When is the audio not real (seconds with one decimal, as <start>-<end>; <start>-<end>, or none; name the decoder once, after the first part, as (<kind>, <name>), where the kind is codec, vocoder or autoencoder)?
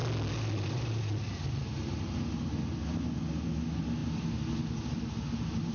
none